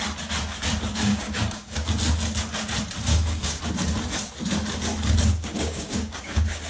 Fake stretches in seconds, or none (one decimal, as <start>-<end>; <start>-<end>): 1.1-1.9; 3.1-3.6; 5.3-6.7